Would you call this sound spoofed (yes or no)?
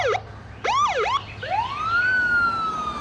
no